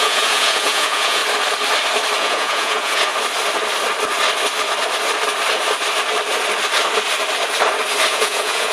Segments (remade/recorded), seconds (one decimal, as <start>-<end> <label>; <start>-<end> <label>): 0.0-1.2 remade; 1.2-2.2 recorded; 2.2-3.1 remade; 3.1-8.1 recorded; 8.1-8.7 remade